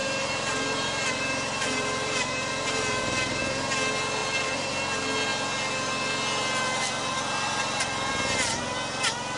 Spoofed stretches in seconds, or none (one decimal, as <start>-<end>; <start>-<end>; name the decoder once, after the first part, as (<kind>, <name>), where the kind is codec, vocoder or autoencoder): 0.0-3.4 (vocoder, BigVGAN v2); 4.2-4.7